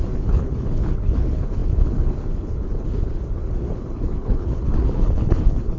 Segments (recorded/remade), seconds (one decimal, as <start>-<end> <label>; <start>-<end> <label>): 0.0-5.8 remade